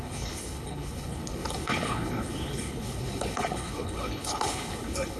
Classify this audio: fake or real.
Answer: fake